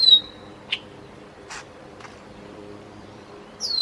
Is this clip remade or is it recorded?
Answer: remade